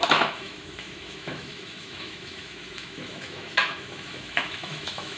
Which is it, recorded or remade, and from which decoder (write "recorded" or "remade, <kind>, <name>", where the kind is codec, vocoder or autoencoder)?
remade, autoencoder, DAC-VAE